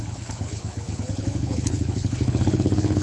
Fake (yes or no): yes